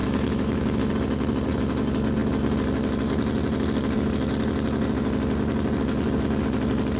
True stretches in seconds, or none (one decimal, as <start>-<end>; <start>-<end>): 0.9-7.0